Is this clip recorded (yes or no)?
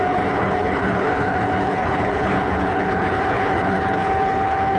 no